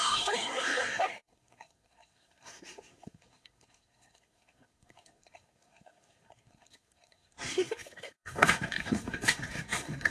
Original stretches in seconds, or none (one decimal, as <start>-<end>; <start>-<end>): none